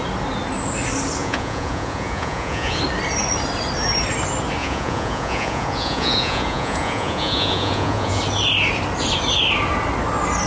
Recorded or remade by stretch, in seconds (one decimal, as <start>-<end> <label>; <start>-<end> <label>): 0.0-1.2 recorded; 1.2-2.8 remade; 2.8-4.6 recorded; 4.6-8.2 remade; 8.2-10.5 recorded